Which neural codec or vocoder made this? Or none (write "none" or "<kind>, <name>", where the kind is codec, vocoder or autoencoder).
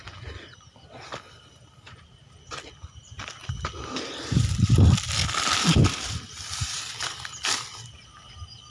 vocoder, BigVGAN v2